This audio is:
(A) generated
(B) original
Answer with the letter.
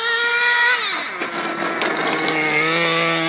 B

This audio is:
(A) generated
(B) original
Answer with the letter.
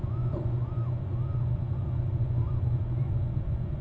A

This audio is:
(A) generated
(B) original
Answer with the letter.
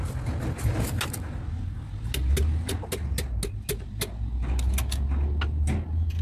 B